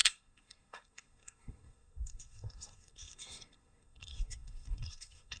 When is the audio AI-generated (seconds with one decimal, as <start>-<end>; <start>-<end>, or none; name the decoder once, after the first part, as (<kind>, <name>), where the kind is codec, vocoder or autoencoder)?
0.0-5.4 (codec, SNAC)